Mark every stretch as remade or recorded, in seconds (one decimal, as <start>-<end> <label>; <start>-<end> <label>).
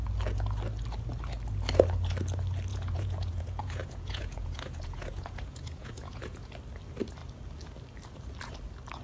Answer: 0.0-2.7 recorded; 2.7-6.5 remade; 6.5-9.0 recorded